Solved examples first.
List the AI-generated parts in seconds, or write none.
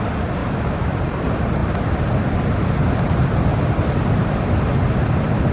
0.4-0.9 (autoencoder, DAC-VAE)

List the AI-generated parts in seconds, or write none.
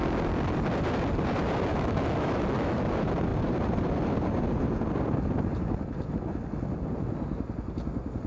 1.7-2.8 (autoencoder, DAC-VAE)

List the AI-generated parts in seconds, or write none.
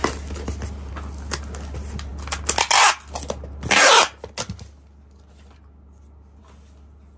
none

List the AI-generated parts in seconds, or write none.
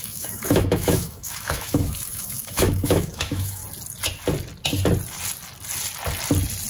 0.0-3.6 (autoencoder, DAC-VAE)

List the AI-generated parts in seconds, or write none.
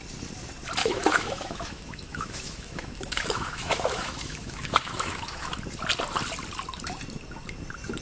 0.8-5.6 (autoencoder, DAC-VAE)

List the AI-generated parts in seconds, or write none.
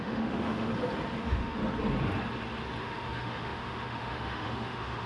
0.0-0.7 (autoencoder, DAC-VAE); 1.2-1.6; 2.8-5.1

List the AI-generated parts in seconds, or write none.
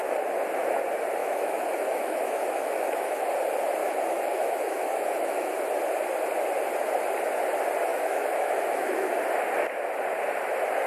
1.2-3.3 (autoencoder, DAC-VAE); 3.8-5.5; 7.9-9.1